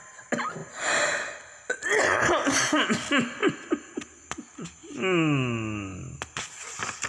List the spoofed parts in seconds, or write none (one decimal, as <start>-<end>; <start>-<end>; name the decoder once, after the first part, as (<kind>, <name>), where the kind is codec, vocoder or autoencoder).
none